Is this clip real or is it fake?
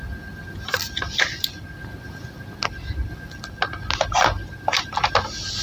real